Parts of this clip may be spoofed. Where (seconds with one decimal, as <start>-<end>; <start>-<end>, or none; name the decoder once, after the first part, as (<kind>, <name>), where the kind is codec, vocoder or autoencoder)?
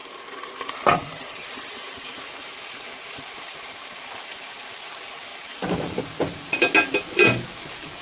0.0-4.8 (vocoder, BigVGAN v2); 5.3-6.0